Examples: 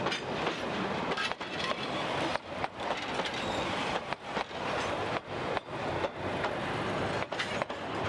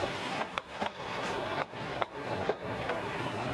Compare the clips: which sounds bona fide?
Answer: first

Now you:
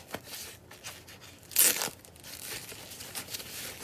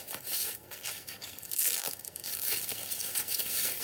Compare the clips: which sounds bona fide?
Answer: first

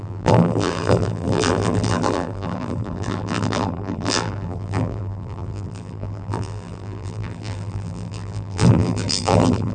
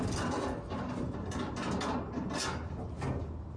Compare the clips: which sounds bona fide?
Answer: second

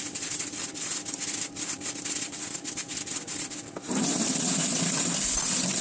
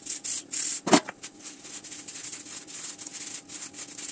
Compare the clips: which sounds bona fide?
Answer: second